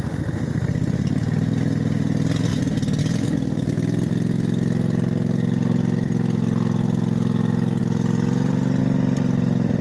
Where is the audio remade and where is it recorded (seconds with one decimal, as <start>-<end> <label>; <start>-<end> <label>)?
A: 0.0-2.5 recorded; 2.5-3.0 remade; 3.0-7.8 recorded; 7.8-8.8 remade; 8.8-9.8 recorded